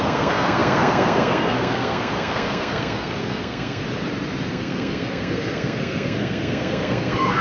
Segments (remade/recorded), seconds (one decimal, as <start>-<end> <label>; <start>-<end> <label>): 0.0-3.8 remade; 3.8-4.5 recorded; 4.5-7.4 remade